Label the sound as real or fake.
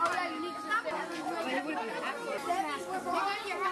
real